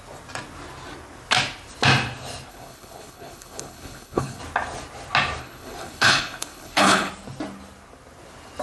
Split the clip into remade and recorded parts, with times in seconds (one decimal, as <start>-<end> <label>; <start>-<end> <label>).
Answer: 0.0-2.5 recorded; 2.5-4.4 remade; 4.4-5.4 recorded; 5.4-7.1 remade; 7.1-8.6 recorded